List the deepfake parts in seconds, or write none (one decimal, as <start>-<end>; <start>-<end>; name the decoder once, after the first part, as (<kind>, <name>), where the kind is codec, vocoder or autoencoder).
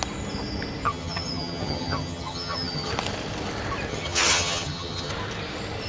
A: 0.9-2.9 (vocoder, HiFi-GAN); 3.9-5.1